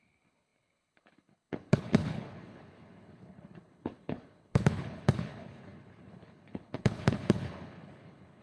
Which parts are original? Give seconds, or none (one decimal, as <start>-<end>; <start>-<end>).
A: none